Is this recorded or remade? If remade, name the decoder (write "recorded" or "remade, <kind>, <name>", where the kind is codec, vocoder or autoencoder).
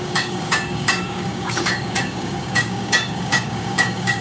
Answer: remade, codec, DAC